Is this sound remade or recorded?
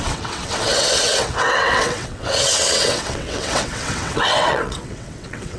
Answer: remade